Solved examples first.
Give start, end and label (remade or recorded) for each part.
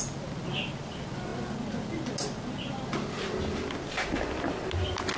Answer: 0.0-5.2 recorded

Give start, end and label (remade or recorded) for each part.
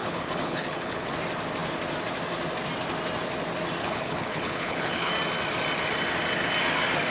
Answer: 0.0-1.1 remade; 1.1-3.8 recorded; 3.8-5.1 remade; 5.1-7.1 recorded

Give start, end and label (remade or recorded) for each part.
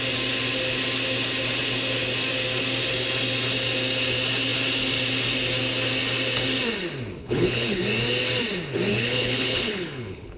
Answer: 0.0-7.2 recorded; 7.2-7.8 remade; 7.8-8.9 recorded; 8.9-10.4 remade